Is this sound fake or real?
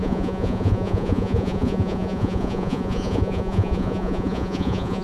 fake